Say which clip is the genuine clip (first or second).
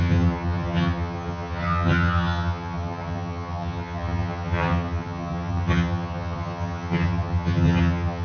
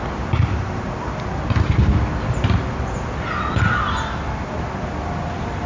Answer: second